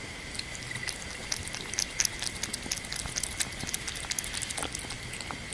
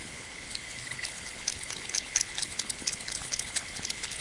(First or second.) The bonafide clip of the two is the first